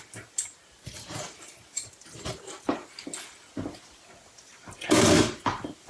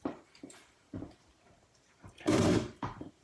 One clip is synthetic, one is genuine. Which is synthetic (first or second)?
second